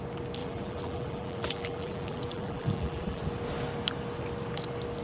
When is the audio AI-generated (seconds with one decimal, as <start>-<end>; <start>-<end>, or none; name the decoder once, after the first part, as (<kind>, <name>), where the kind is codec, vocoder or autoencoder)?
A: 0.4-3.2 (vocoder, BigVGAN v2)